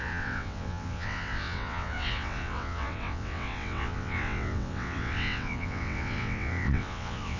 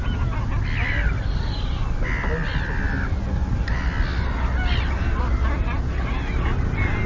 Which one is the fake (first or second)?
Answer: first